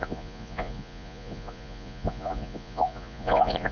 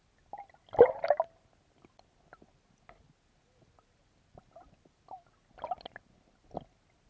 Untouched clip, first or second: second